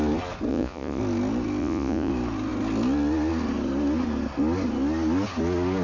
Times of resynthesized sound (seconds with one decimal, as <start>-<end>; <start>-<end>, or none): 0.5-1.0; 1.6-2.1